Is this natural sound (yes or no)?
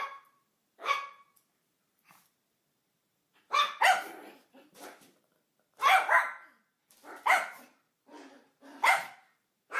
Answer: no